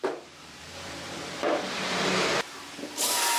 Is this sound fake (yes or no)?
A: yes